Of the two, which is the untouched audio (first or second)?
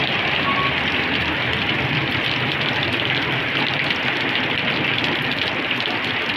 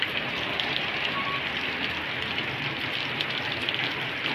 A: second